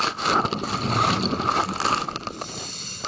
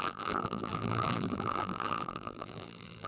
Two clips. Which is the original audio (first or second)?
first